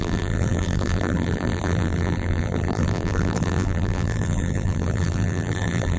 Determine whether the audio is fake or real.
fake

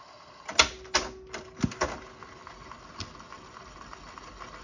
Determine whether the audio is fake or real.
real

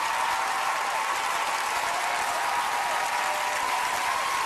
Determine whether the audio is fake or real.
real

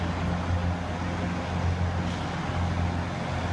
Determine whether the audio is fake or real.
real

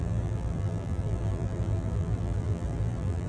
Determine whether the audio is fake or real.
fake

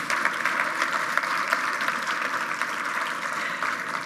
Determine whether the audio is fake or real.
fake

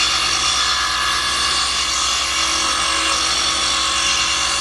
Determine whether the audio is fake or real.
real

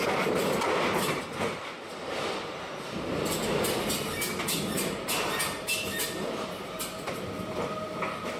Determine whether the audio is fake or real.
fake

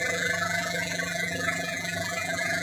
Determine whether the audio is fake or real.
fake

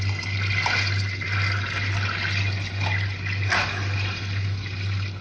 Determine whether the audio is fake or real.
real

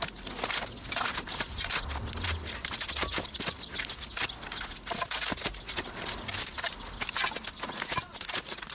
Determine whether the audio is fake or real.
real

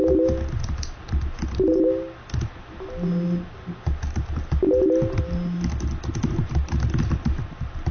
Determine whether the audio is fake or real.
real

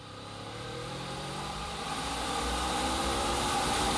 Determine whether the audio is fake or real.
fake